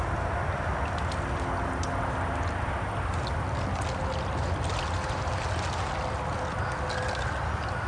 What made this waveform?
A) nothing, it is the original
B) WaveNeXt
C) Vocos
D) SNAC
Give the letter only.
A